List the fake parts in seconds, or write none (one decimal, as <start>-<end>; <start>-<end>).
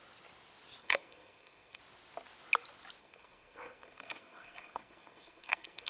0.8-1.8; 3.0-5.9